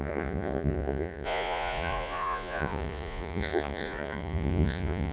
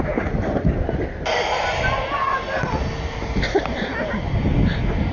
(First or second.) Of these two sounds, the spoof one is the first